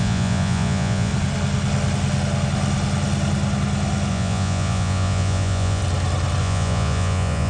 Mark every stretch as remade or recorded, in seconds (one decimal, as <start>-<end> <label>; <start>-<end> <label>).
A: 0.0-1.1 remade; 1.1-4.1 recorded; 4.1-5.8 remade; 5.8-6.4 recorded; 6.4-7.5 remade